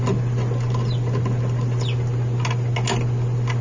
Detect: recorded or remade recorded